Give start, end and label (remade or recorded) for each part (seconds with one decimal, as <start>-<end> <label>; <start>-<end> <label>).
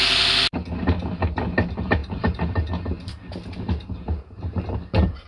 0.0-2.0 recorded; 2.0-2.7 remade; 2.7-5.3 recorded